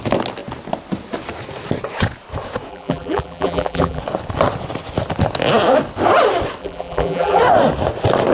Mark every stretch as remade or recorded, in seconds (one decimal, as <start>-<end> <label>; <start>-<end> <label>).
0.0-2.7 recorded; 2.7-4.0 remade; 4.0-6.6 recorded; 6.6-7.4 remade; 7.4-8.3 recorded